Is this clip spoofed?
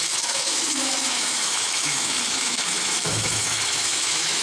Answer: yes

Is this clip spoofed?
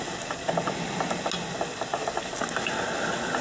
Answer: no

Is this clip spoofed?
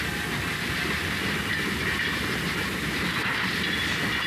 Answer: no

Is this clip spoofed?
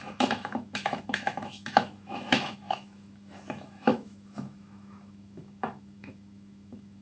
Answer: yes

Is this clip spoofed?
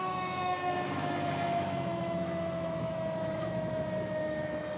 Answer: yes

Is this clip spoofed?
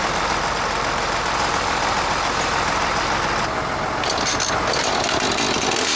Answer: no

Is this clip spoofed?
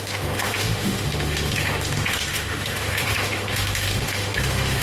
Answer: yes